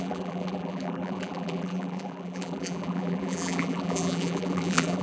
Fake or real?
fake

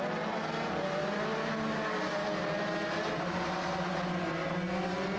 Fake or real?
real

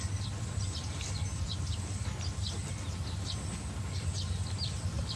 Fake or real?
real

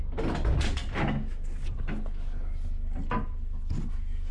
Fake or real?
real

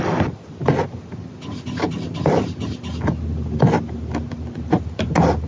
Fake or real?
real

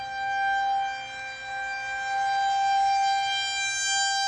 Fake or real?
real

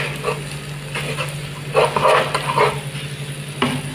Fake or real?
real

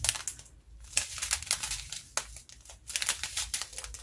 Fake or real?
real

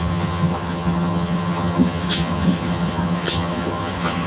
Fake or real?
fake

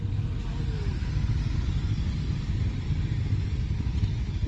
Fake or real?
real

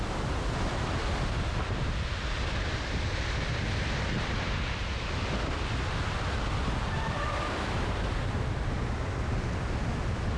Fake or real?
real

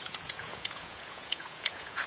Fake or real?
fake